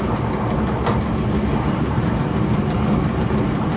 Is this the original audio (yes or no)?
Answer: yes